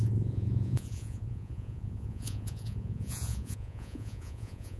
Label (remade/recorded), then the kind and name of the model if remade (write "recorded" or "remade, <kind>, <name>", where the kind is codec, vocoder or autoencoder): remade, vocoder, Vocos